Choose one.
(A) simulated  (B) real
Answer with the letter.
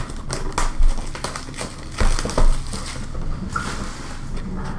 B